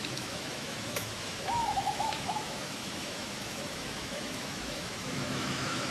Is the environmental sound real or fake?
fake